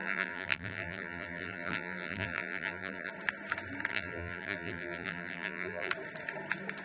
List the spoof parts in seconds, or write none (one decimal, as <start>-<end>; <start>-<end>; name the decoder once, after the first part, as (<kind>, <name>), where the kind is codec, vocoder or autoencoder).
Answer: 0.0-3.1 (vocoder, BigVGAN v2); 3.9-5.9